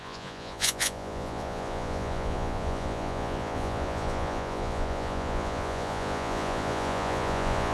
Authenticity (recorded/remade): remade